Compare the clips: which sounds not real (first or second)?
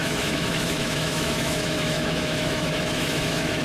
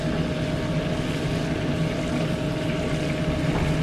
first